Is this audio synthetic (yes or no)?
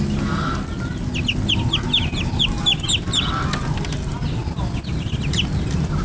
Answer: no